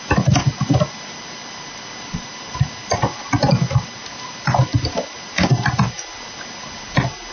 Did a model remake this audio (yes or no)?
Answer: no